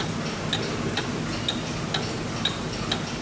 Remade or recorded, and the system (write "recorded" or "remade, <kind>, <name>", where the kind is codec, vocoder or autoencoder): recorded